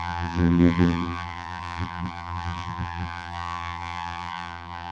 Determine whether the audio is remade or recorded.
remade